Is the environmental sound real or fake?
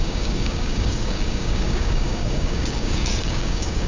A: fake